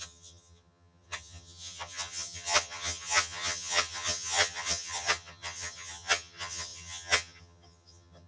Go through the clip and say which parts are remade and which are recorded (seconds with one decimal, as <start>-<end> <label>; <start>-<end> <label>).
0.0-8.3 remade